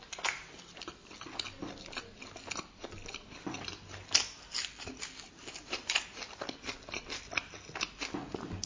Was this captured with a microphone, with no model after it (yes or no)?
yes